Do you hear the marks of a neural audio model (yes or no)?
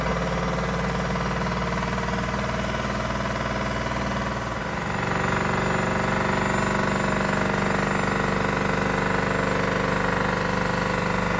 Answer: no